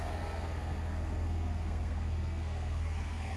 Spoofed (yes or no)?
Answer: yes